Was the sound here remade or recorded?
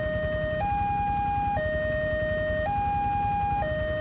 recorded